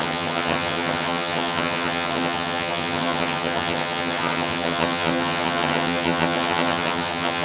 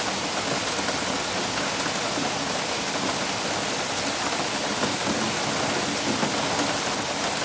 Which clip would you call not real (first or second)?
first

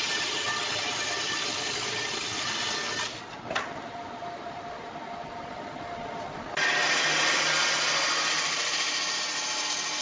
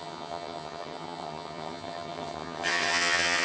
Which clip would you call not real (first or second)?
second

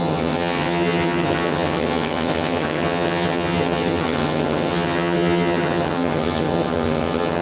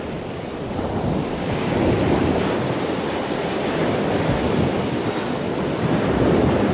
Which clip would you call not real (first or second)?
first